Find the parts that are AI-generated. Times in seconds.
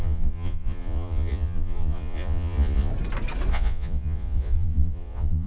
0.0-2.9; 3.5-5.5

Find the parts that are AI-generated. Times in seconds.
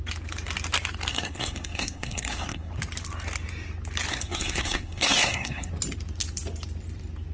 1.1-2.7; 4.1-5.7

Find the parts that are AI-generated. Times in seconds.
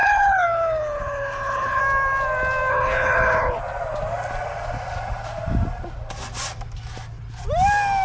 0.0-1.8; 2.7-3.6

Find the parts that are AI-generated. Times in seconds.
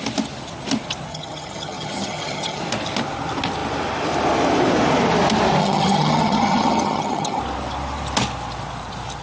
1.1-2.6; 5.6-7.4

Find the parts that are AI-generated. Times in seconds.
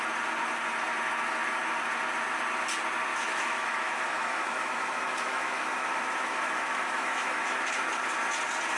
3.1-7.7